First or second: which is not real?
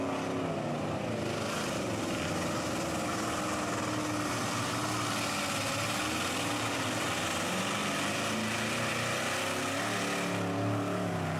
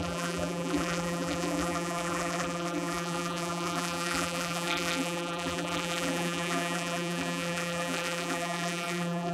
second